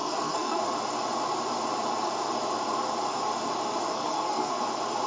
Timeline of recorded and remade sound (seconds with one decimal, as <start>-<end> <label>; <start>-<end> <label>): 0.0-0.6 remade; 0.6-3.9 recorded; 3.9-4.6 remade; 4.6-5.1 recorded